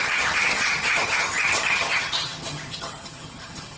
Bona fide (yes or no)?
no